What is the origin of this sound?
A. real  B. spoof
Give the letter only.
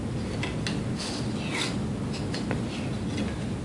A